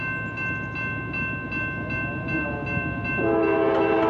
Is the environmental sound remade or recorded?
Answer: recorded